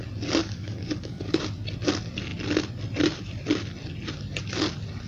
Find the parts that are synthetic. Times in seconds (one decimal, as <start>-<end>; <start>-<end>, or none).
0.4-1.4